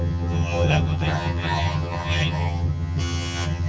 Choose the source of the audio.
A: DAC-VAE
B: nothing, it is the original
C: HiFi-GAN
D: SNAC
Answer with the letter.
C